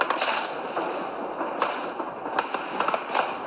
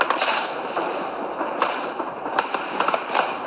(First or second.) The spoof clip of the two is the second